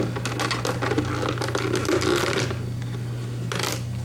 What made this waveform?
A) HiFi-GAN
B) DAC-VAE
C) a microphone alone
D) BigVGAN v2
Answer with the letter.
C